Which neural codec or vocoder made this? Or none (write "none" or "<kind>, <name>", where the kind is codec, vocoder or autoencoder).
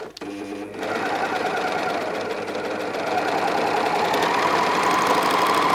none